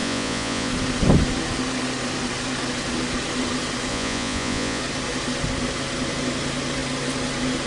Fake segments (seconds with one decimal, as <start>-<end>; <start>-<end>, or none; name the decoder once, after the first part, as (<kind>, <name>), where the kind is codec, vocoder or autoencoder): 0.0-0.7 (vocoder, Vocos); 3.9-4.8